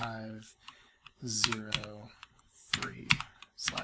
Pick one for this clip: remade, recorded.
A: remade